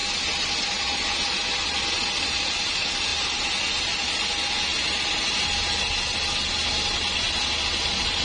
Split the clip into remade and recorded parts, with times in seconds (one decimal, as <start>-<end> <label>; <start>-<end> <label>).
0.0-8.2 recorded